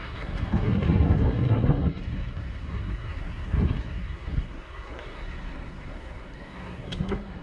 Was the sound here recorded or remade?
remade